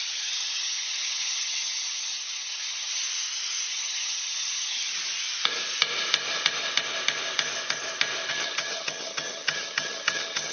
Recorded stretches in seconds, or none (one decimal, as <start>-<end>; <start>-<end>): 3.0-3.7; 4.9-8.3